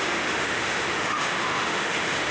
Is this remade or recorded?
remade